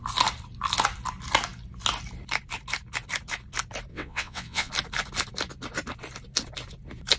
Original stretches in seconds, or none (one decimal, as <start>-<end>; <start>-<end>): 0.0-3.9; 4.7-7.2